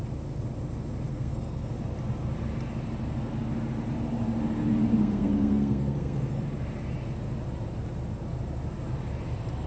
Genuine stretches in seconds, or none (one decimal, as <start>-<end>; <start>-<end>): 0.0-1.1; 1.7-5.0; 6.4-9.7